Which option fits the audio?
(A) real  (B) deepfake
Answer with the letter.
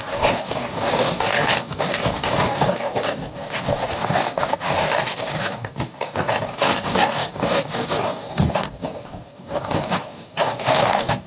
B